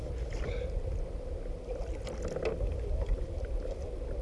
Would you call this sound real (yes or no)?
yes